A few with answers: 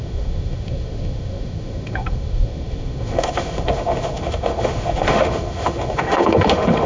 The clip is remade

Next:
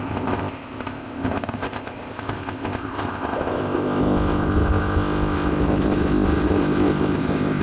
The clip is remade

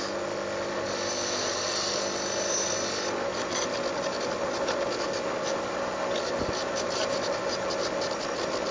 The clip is recorded